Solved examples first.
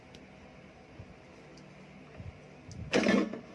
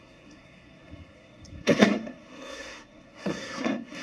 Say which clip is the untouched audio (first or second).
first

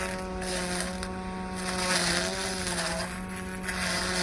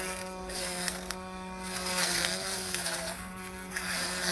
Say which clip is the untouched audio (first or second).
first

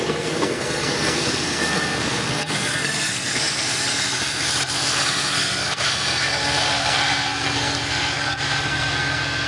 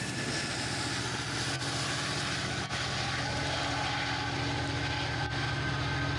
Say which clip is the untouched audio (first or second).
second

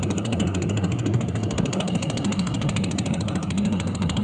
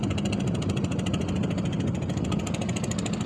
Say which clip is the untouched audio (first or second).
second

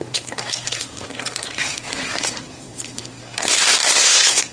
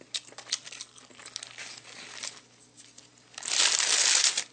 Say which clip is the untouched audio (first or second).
second